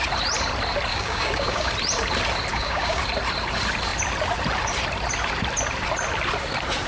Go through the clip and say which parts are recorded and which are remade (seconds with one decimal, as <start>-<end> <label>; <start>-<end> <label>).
0.0-0.9 recorded; 0.9-1.7 remade; 1.7-2.5 recorded; 2.5-3.0 remade; 3.0-6.9 recorded